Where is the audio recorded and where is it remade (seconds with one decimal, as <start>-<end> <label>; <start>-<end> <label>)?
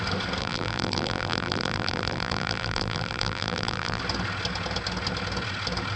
0.0-0.4 recorded; 0.4-4.0 remade; 4.0-6.0 recorded